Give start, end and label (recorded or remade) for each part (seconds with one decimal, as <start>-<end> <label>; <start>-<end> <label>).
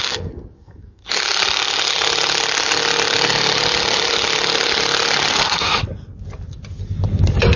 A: 0.0-1.0 remade; 1.0-5.3 recorded; 5.3-5.8 remade; 5.8-7.6 recorded